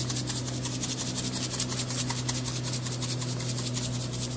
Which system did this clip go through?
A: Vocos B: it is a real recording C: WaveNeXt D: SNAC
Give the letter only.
B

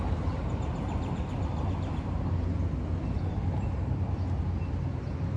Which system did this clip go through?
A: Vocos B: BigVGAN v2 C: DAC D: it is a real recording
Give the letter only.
D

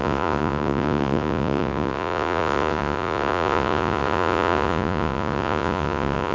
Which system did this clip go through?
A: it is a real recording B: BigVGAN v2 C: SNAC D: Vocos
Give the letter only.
D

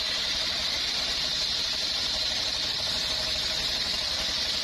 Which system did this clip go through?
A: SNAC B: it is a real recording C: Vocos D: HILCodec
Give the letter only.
B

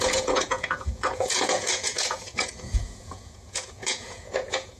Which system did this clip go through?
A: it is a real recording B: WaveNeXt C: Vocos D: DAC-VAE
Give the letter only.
C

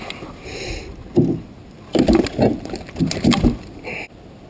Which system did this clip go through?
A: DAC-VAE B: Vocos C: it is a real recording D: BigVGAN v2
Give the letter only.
C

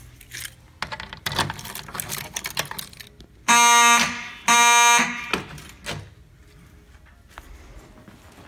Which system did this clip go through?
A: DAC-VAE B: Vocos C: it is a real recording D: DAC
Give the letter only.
C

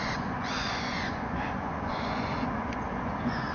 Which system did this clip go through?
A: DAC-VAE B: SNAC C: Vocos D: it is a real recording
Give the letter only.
C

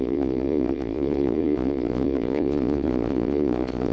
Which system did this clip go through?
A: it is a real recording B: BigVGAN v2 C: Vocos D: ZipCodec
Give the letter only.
C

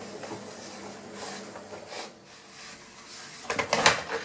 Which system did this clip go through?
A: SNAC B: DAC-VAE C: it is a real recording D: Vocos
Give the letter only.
C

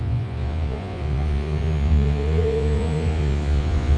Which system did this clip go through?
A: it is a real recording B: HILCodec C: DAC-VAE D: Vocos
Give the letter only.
D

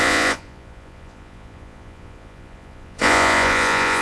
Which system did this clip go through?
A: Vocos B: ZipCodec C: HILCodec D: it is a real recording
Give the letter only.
A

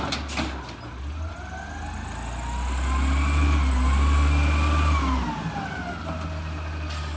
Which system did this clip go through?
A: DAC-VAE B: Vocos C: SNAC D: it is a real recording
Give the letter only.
D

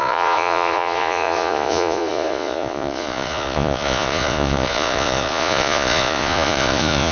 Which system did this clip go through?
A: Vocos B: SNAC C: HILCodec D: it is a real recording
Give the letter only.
A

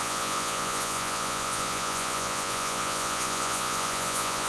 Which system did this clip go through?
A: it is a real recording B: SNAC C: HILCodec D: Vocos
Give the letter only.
D